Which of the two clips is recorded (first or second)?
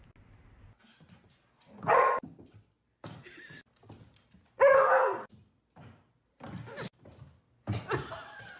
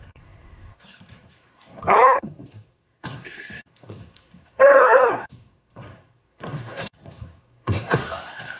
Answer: first